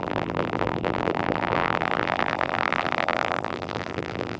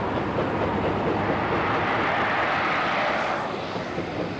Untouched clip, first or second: second